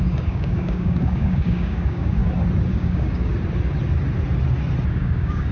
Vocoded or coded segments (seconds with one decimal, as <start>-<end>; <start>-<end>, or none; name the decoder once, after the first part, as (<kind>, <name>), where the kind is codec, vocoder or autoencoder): 0.0-2.2 (codec, DAC); 2.7-3.3; 4.9-5.5

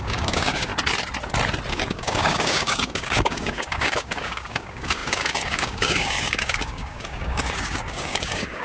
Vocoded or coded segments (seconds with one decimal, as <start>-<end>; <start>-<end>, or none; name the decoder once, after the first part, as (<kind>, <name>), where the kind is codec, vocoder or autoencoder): 0.0-0.7 (codec, DAC); 1.7-8.6

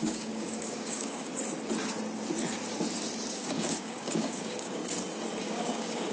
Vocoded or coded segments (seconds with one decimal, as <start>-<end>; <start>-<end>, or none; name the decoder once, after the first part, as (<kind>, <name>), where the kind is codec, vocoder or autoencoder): 0.0-1.3 (codec, DAC); 3.3-4.8; 5.4-6.1

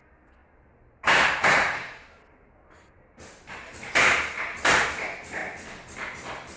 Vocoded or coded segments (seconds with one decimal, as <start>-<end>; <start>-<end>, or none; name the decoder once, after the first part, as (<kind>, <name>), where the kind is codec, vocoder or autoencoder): none

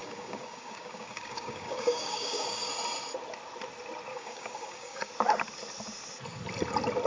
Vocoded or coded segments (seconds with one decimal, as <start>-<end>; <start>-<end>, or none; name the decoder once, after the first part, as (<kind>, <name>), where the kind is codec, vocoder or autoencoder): 0.0-2.7 (codec, DAC); 4.1-5.1

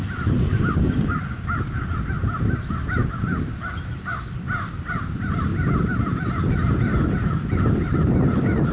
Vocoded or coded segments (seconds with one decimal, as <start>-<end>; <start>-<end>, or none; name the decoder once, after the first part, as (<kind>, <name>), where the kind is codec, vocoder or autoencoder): 0.5-1.9 (codec, DAC); 3.0-3.6

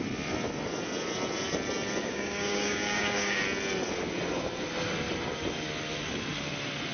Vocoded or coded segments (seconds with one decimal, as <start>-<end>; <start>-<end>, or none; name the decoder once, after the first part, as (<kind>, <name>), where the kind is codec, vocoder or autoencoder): 2.0-3.4 (codec, DAC)